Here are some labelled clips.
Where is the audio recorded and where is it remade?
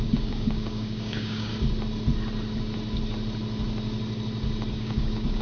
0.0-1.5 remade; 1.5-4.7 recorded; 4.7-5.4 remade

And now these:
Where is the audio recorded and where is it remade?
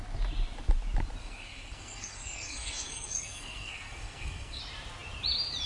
0.0-1.2 recorded; 1.2-4.6 remade; 4.6-5.7 recorded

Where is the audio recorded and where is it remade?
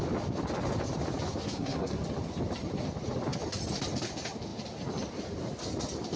0.0-1.4 recorded; 1.4-2.0 remade; 2.0-6.2 recorded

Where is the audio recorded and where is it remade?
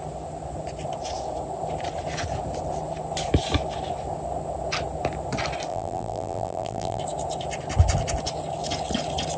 0.0-5.7 recorded; 5.7-7.0 remade; 7.0-9.4 recorded